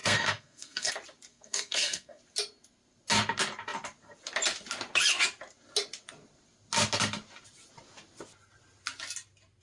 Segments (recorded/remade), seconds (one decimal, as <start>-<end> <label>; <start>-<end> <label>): 0.0-0.9 remade; 0.9-1.3 recorded; 1.3-2.2 remade; 2.2-9.6 recorded